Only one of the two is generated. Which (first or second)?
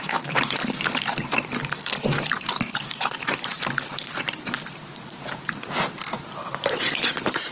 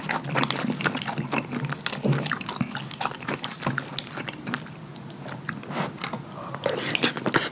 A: first